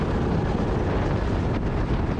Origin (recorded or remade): recorded